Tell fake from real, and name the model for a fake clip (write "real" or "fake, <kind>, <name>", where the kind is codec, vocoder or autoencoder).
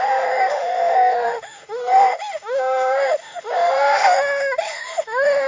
fake, autoencoder, DAC-VAE